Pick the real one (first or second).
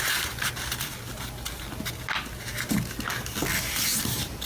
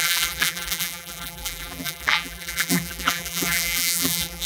first